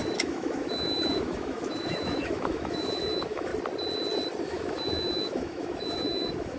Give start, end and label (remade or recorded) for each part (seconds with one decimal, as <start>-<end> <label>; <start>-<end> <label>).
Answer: 0.0-3.5 remade; 3.5-4.4 recorded; 4.4-6.6 remade